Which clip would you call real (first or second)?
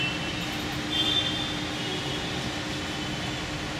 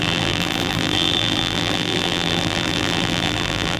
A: first